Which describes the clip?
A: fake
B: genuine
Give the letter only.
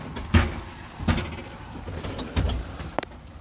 B